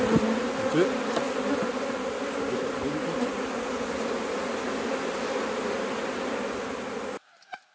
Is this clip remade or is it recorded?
recorded